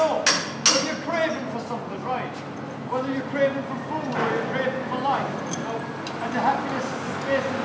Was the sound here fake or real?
real